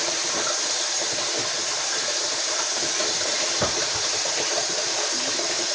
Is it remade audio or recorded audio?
remade